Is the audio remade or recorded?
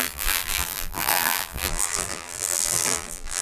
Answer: remade